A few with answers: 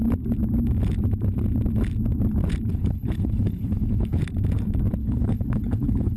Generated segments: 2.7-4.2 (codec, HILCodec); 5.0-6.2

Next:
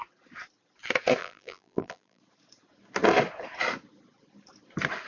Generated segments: 1.2-2.2 (vocoder, BigVGAN v2)

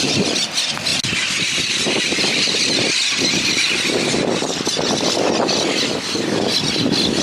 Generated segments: none

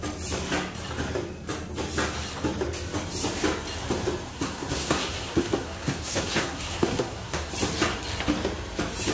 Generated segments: 4.3-7.5 (codec, SNAC)

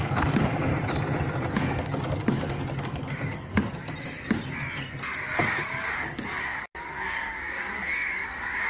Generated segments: 0.0-0.7 (codec, DAC); 1.5-3.6; 5.4-8.7

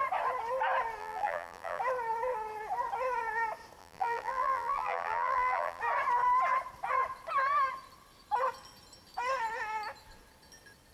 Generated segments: 1.0-1.8 (vocoder, BigVGAN v2); 3.8-5.8

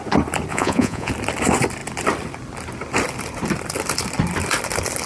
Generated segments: 0.5-1.1 (vocoder, Vocos)